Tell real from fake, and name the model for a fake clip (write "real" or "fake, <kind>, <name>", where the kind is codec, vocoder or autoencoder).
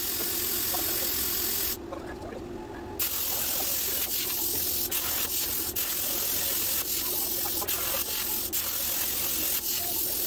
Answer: real